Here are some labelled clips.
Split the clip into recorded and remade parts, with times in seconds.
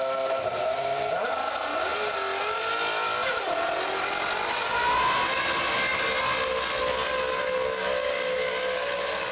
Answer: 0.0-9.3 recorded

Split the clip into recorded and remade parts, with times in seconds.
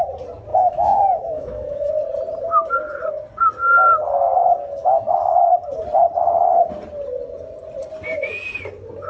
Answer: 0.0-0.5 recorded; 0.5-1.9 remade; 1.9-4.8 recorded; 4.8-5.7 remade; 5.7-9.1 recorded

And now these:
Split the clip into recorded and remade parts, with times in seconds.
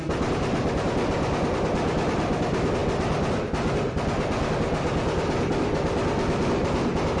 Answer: 0.0-7.2 recorded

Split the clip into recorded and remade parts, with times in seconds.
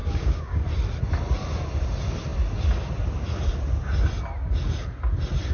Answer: 0.0-0.6 remade; 0.6-5.5 recorded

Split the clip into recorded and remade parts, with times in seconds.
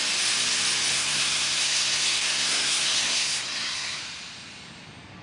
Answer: 0.0-0.9 recorded; 0.9-4.0 remade; 4.0-5.2 recorded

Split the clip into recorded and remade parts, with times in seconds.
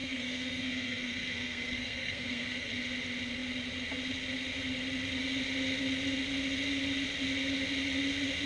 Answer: 0.0-2.7 remade; 2.7-8.5 recorded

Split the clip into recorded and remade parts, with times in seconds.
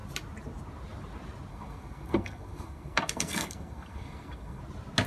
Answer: 0.0-1.5 recorded; 1.5-4.6 remade; 4.6-5.1 recorded